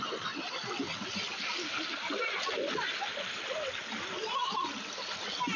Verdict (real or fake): real